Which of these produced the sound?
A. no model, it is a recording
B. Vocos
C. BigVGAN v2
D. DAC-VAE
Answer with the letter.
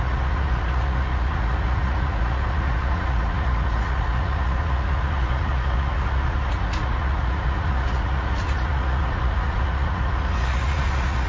B